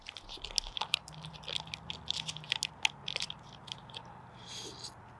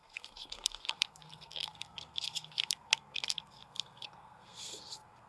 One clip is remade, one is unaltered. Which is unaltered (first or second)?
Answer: first